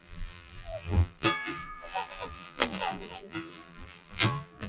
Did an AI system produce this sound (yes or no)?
yes